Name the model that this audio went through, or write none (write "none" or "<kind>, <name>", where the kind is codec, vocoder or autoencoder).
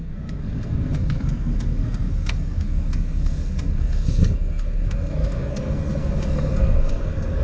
codec, SNAC